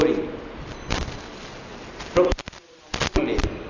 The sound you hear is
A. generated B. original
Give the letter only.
B